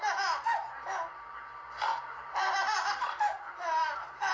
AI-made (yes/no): yes